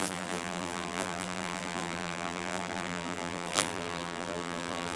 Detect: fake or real fake